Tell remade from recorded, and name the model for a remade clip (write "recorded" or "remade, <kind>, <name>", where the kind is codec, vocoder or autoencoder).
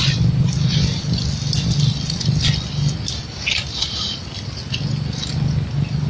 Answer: recorded